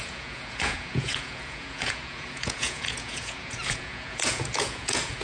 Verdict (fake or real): fake